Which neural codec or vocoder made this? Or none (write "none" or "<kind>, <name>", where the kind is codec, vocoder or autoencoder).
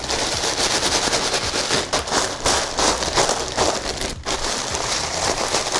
none